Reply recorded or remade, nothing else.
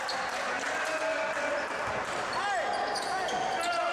recorded